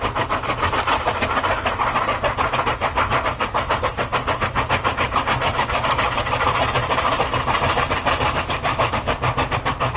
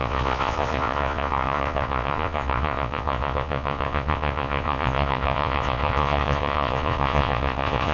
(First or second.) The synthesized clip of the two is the second